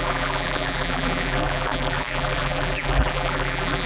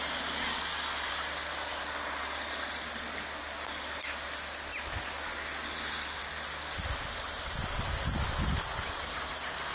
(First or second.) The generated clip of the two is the first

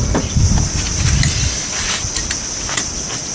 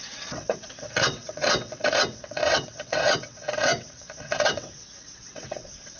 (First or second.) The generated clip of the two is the second